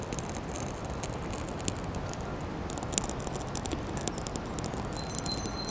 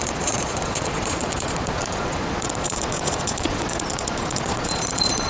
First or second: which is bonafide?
first